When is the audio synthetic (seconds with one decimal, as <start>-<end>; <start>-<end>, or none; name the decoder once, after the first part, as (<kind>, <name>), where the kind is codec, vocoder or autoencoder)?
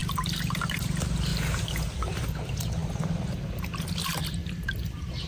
none